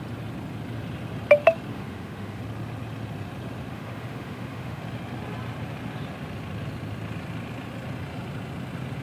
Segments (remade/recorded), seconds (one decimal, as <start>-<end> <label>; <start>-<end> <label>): 0.0-1.7 recorded; 1.7-2.4 remade; 2.4-3.7 recorded; 3.7-4.8 remade; 4.8-9.0 recorded